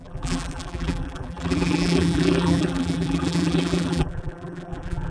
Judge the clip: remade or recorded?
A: remade